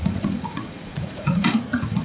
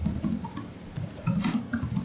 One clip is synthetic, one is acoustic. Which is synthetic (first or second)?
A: first